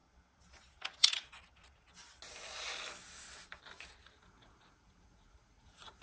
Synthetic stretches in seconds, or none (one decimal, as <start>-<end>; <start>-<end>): 4.0-6.0